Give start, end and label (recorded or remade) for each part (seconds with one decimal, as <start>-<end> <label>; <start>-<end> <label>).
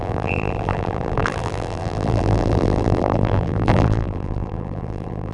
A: 0.0-5.3 remade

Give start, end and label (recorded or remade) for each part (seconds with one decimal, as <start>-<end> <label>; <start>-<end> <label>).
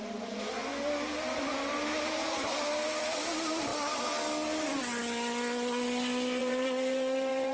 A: 0.0-0.7 remade; 0.7-1.7 recorded; 1.7-3.7 remade; 3.7-6.4 recorded; 6.4-7.5 remade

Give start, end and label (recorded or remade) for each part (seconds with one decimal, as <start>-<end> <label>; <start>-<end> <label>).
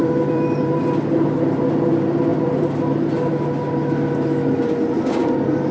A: 0.0-0.8 remade; 0.8-2.3 recorded; 2.3-3.7 remade; 3.7-5.7 recorded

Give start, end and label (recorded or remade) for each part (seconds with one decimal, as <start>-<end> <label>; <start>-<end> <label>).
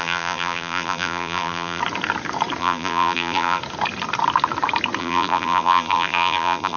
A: 0.0-1.8 remade; 1.8-2.6 recorded; 2.6-3.6 remade; 3.6-5.0 recorded; 5.0-6.8 remade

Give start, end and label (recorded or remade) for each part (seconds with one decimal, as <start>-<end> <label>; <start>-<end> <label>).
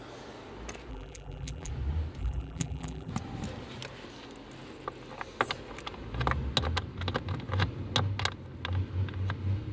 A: 0.0-0.9 recorded; 0.9-1.7 remade; 1.7-2.2 recorded; 2.2-3.1 remade; 3.1-9.7 recorded